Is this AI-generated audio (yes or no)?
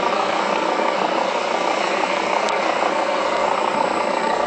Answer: yes